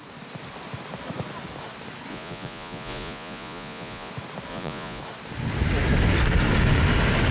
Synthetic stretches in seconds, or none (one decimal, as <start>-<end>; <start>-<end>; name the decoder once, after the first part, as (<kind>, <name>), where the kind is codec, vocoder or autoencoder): 2.1-4.1 (vocoder, Vocos); 4.5-5.0